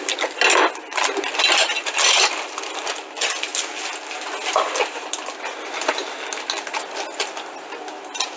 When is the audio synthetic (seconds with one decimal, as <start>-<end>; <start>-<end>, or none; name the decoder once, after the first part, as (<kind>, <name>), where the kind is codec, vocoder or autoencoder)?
none